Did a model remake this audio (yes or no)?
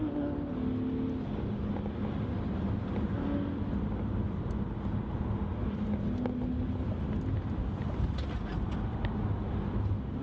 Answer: no